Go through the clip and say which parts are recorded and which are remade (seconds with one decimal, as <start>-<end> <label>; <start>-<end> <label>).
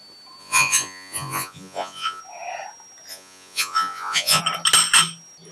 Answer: 0.0-0.4 recorded; 0.4-2.2 remade; 2.2-3.1 recorded; 3.1-4.4 remade; 4.4-5.5 recorded